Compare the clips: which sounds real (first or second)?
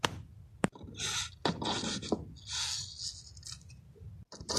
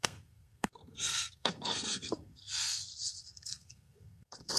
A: first